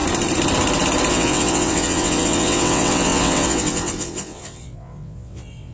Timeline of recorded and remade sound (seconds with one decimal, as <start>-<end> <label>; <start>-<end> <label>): 0.0-1.1 recorded; 1.1-5.7 remade